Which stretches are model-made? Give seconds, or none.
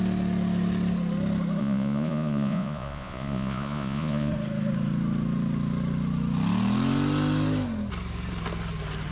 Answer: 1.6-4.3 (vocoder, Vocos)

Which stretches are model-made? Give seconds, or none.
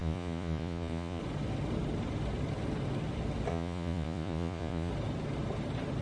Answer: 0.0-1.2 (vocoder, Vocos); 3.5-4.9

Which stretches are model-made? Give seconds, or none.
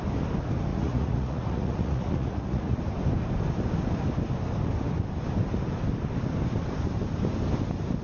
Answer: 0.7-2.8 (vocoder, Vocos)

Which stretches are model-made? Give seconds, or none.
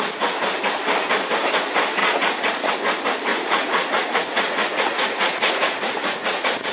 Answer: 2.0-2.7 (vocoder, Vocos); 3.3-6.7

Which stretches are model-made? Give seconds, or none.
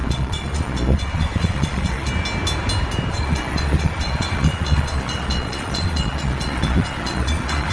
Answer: 0.0-2.1 (vocoder, Vocos); 3.1-7.7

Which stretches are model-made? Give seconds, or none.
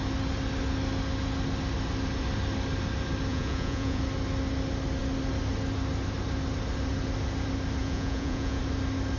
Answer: 3.3-4.0 (vocoder, Vocos); 7.8-8.6